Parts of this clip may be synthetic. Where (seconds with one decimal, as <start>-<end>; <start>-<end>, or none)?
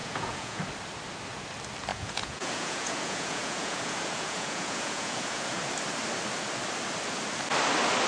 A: 0.0-0.6; 1.9-5.6